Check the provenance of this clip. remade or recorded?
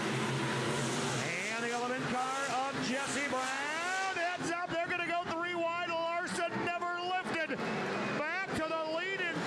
recorded